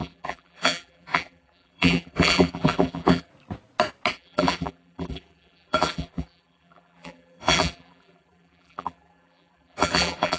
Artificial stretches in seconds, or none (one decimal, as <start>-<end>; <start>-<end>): 0.0-3.3; 4.1-10.4